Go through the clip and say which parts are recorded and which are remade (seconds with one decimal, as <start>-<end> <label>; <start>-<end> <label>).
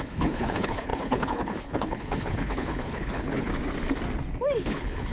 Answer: 0.0-3.5 remade; 3.5-4.6 recorded; 4.6-5.1 remade